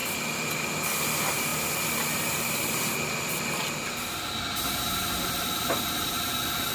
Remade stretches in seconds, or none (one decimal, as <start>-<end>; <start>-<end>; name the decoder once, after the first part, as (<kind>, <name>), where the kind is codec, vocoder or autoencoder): none